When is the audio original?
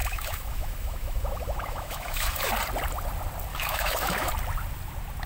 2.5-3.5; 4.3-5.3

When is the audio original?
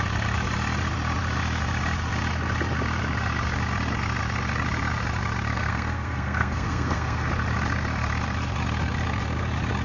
0.0-5.5; 7.3-9.8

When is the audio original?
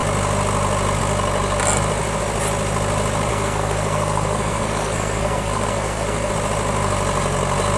0.0-3.3; 6.3-7.8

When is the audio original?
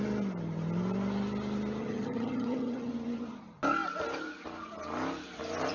0.0-1.8; 2.9-5.7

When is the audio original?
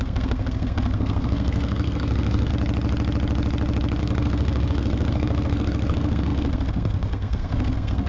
2.5-4.0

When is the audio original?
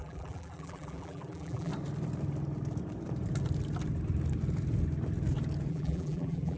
1.7-5.7